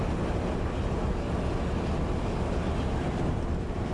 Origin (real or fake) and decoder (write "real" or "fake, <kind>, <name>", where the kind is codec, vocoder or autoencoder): real